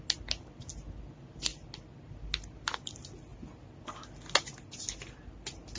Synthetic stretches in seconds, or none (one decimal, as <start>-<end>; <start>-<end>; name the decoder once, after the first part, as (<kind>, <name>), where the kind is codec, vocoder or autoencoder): none